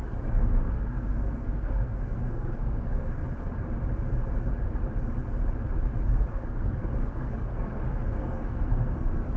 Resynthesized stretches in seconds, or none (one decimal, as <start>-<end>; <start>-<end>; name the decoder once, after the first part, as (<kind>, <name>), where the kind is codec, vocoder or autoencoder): 0.0-3.2 (codec, SNAC); 6.3-9.4